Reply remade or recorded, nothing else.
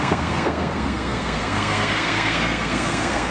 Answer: remade